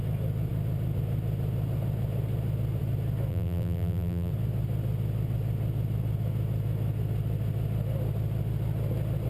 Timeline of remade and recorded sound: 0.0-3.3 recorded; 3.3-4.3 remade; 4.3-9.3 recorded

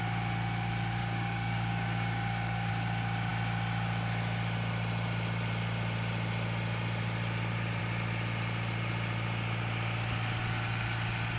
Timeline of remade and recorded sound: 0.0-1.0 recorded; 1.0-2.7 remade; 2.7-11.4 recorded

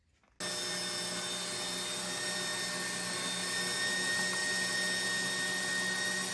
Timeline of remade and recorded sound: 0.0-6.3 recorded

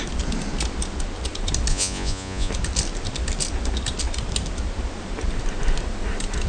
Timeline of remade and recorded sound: 0.0-1.7 recorded; 1.7-2.5 remade; 2.5-6.5 recorded

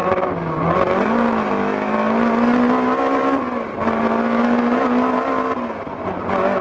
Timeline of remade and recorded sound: 0.0-6.6 recorded

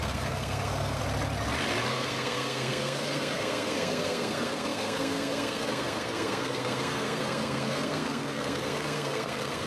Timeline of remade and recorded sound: 0.0-1.0 remade; 1.0-1.9 recorded; 1.9-9.7 remade

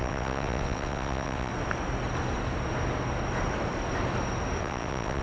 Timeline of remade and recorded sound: 0.0-1.5 remade; 1.5-4.6 recorded; 4.6-5.2 remade

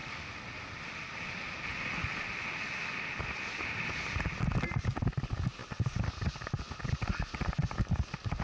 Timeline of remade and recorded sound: 0.0-8.4 recorded